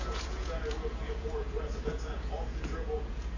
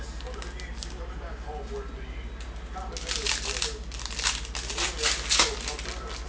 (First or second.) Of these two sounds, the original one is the second